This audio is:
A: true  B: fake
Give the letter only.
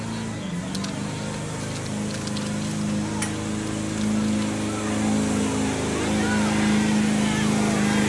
A